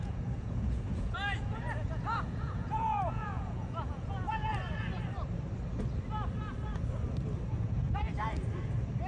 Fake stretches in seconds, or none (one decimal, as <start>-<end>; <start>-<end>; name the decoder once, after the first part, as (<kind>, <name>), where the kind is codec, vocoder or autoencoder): 0.0-4.5 (vocoder, Vocos); 7.5-8.0